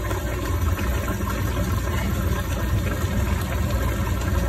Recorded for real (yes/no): yes